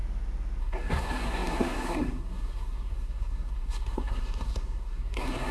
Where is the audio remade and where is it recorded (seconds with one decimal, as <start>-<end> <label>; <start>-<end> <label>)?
0.0-0.6 recorded; 0.6-5.5 remade